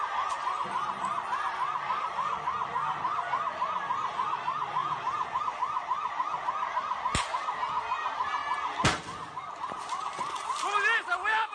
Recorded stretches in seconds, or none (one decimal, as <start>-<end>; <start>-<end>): 0.0-4.8; 5.4-11.5